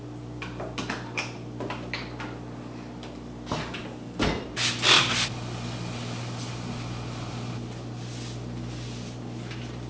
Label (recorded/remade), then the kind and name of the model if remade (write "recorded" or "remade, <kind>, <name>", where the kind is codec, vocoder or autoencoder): recorded